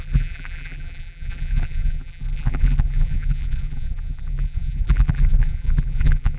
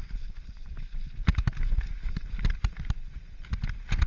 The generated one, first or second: first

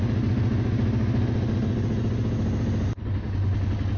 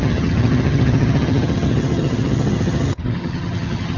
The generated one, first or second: second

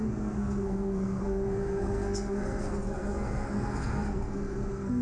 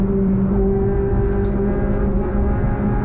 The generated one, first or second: first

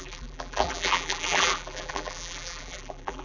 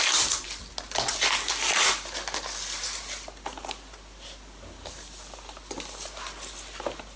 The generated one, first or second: first